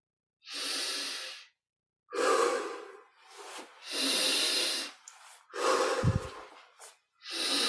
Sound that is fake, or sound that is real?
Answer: real